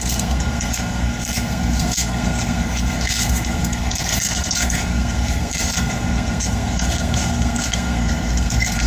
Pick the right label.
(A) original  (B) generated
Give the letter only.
B